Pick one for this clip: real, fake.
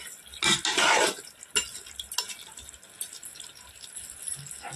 real